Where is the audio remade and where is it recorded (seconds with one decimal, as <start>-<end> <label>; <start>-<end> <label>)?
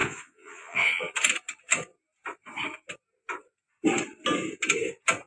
0.0-1.1 remade; 1.1-5.3 recorded